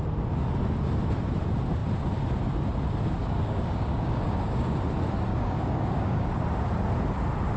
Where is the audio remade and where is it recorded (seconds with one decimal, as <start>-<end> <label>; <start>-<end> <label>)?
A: 0.0-3.2 recorded; 3.2-4.8 remade; 4.8-5.3 recorded; 5.3-6.3 remade; 6.3-7.6 recorded

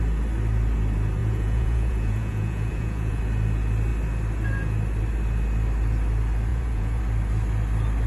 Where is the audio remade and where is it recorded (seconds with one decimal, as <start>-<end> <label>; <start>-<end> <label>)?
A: 0.0-1.2 recorded; 1.2-3.2 remade; 3.2-6.5 recorded; 6.5-7.0 remade; 7.0-8.1 recorded

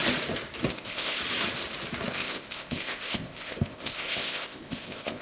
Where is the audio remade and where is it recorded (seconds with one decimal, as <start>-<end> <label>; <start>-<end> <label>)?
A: 0.0-0.7 recorded; 0.7-1.2 remade; 1.2-2.1 recorded; 2.1-5.2 remade